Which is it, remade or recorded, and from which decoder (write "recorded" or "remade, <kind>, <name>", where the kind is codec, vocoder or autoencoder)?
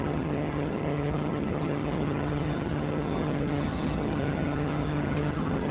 remade, vocoder, HiFi-GAN